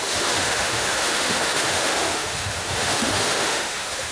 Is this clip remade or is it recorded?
remade